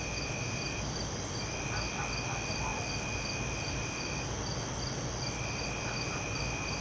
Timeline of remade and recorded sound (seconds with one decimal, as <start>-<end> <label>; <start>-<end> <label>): 0.0-6.8 recorded